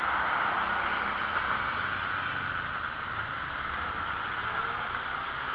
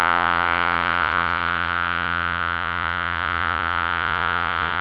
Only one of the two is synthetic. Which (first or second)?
second